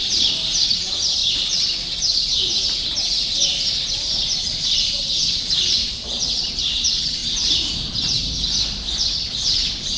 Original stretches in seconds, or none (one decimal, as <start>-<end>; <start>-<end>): 1.2-3.9